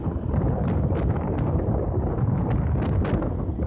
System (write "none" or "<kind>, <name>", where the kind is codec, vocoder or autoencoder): none